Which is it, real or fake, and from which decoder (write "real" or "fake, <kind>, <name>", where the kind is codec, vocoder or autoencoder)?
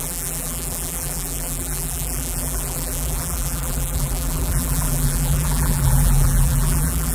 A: fake, vocoder, BigVGAN v2